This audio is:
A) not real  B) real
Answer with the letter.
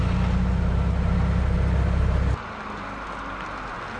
B